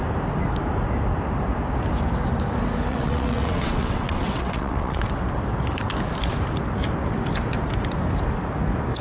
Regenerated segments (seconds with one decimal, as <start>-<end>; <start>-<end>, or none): 2.9-5.0